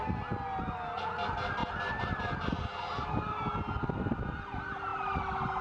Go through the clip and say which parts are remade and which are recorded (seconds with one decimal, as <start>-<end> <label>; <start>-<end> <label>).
0.0-5.6 recorded